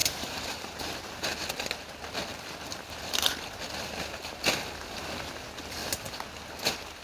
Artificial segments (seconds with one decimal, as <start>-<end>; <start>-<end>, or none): 0.0-0.8

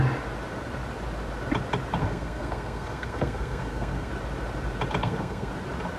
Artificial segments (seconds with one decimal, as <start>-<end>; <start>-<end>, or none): 2.0-4.1; 5.0-5.5

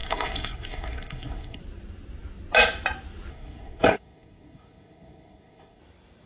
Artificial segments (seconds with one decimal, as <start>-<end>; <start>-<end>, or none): 0.0-1.6; 3.3-5.8

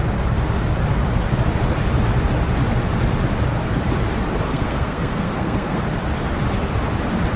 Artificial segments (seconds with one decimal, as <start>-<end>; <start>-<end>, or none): 4.5-5.8